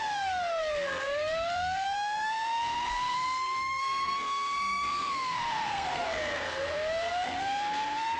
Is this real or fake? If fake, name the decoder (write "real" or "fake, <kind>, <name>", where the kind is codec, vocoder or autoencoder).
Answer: fake, codec, SNAC